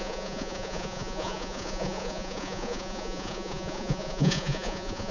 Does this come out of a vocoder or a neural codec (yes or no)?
yes